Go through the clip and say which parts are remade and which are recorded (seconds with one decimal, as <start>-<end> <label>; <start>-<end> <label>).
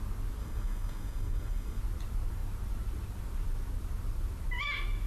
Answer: 0.0-0.4 recorded; 0.4-1.8 remade; 1.8-5.1 recorded